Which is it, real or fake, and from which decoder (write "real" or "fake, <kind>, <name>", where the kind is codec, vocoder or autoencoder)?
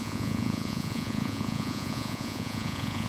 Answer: fake, vocoder, Vocos